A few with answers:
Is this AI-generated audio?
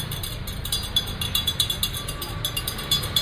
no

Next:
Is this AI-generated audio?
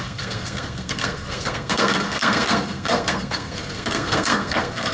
yes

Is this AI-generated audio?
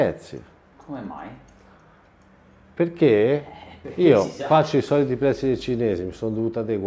no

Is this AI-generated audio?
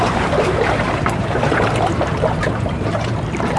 yes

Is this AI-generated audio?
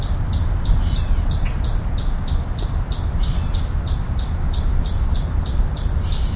no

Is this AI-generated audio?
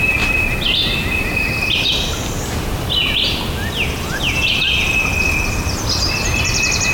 no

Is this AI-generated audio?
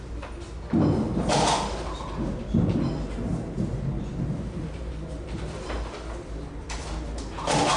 no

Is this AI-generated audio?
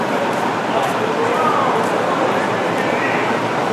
yes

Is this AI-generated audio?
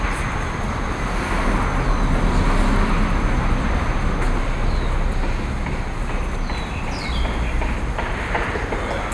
no